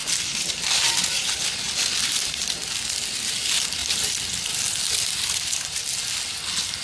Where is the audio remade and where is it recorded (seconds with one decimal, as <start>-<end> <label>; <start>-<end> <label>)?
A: 0.0-6.8 recorded